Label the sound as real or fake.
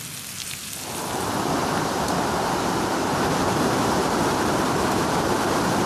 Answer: fake